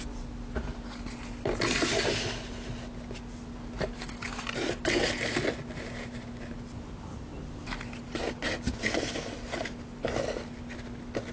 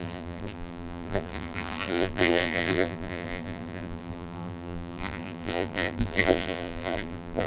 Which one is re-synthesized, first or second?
second